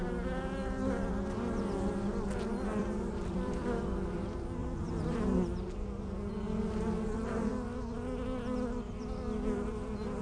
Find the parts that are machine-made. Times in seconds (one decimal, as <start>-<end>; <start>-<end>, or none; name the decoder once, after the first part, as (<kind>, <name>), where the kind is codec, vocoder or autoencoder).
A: 2.7-4.0 (vocoder, BigVGAN v2); 4.6-5.2